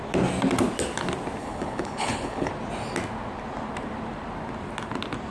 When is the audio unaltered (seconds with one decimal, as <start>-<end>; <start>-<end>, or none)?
0.0-1.4; 2.5-5.3

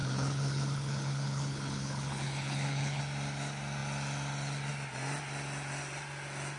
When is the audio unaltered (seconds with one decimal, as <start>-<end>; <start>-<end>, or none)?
3.0-6.6

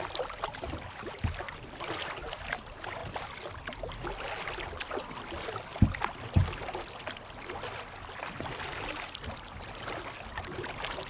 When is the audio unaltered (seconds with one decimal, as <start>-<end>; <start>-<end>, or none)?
0.0-11.1

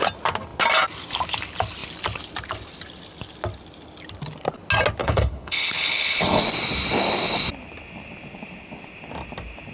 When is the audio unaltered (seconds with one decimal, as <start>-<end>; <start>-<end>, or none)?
0.0-5.0; 6.4-9.7

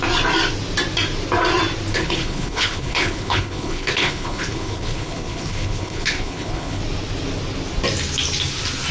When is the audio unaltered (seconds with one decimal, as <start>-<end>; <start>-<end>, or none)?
0.0-1.9; 6.8-8.9

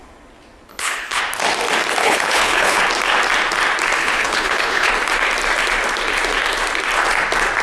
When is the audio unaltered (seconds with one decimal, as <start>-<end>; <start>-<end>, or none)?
0.0-0.7; 1.2-2.0; 2.8-4.0; 4.9-7.6